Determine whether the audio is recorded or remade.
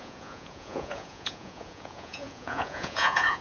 remade